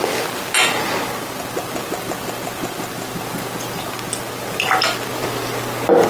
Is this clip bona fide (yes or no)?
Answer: yes